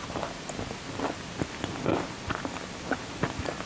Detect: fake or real real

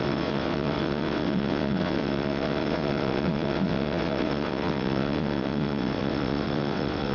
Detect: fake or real fake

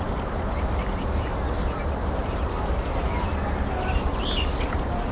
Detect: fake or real real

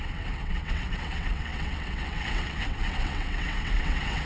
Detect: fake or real fake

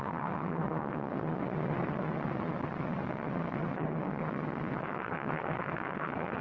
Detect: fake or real fake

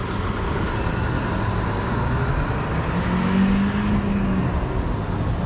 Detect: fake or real real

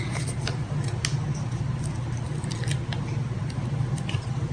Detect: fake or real real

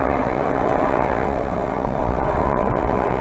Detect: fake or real fake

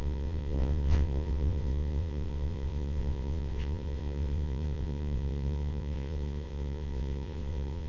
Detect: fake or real fake